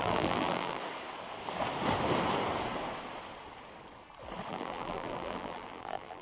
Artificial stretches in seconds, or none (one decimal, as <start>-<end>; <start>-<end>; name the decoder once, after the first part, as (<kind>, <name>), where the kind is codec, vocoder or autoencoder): 0.0-0.8 (vocoder, BigVGAN v2); 4.5-6.2